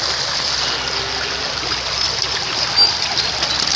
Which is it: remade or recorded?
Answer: recorded